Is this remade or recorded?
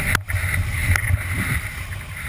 remade